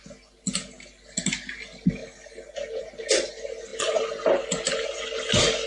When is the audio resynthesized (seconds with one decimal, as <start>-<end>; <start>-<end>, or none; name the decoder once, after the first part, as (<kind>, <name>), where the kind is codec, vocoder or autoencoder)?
none